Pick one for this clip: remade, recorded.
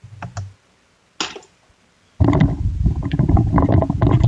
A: recorded